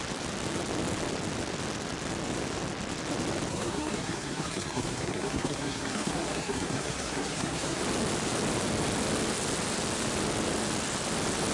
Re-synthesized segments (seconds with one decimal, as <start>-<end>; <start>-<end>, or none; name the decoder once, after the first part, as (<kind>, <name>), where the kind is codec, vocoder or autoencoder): 3.5-7.8 (codec, SNAC)